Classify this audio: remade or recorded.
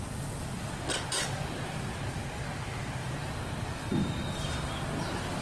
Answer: recorded